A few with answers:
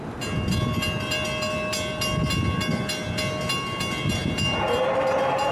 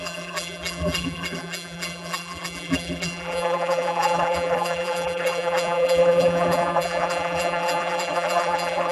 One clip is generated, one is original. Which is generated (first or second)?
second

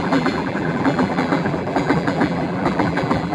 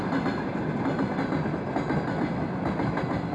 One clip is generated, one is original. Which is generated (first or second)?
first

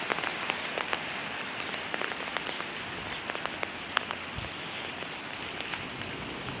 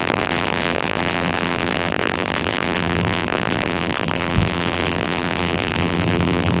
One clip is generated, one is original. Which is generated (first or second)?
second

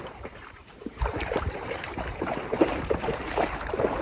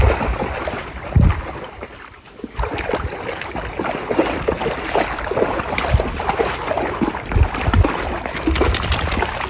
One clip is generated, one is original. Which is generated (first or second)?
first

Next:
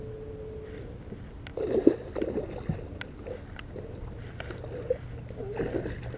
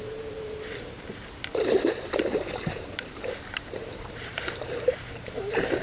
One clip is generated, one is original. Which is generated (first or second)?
second